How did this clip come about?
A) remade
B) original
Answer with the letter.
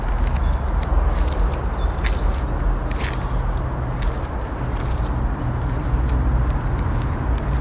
B